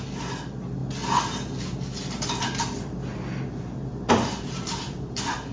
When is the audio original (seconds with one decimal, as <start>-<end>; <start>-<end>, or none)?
0.0-5.5

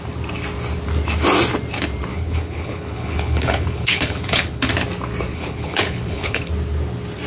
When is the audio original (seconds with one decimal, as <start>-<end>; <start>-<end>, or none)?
0.0-2.1; 4.7-5.3; 6.5-7.3

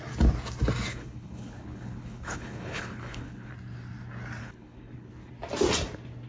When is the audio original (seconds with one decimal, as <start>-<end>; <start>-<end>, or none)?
0.0-0.9; 3.5-4.4; 5.3-6.3

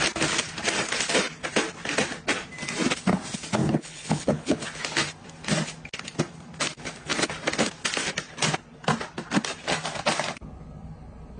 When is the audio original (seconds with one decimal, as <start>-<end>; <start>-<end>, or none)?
0.0-3.6; 4.6-11.4

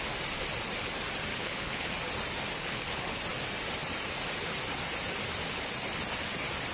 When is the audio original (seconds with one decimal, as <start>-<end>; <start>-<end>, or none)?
0.0-1.3; 1.9-2.6; 3.2-6.7

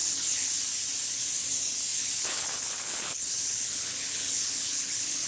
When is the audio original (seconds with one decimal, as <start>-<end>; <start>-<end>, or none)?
0.5-1.9

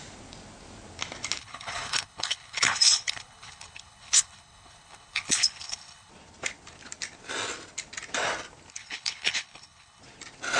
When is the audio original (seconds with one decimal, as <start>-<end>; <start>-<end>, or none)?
0.0-1.4; 6.1-8.7; 10.0-10.6